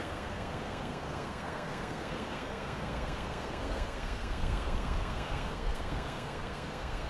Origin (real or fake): fake